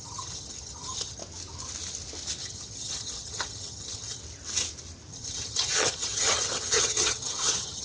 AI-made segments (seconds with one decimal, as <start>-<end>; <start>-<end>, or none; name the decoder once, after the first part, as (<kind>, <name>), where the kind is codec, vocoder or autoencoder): 0.0-1.2 (vocoder, HiFi-GAN); 2.4-4.2; 5.1-7.8